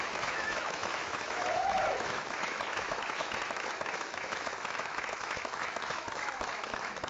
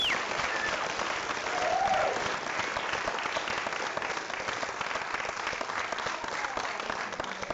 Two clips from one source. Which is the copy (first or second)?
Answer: first